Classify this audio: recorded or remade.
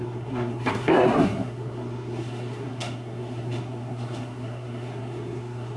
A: remade